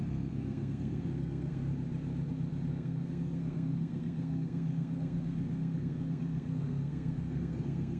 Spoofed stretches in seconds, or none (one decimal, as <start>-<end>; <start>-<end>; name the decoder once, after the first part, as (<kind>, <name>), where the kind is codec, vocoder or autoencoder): 0.0-1.7 (codec, SNAC); 2.7-8.0